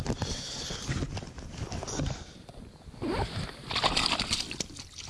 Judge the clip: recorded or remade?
recorded